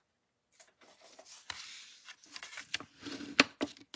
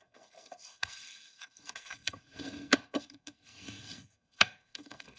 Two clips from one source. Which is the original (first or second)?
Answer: first